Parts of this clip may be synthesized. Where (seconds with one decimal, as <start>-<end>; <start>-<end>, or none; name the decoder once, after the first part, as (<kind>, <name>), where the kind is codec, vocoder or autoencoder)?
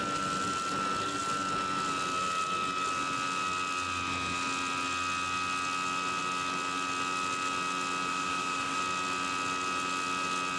8.1-8.8 (autoencoder, DAC-VAE)